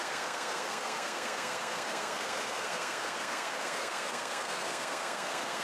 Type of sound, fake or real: fake